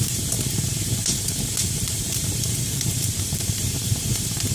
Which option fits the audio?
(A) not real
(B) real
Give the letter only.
A